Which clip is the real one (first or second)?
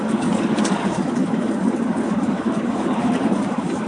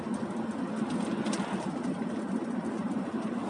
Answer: second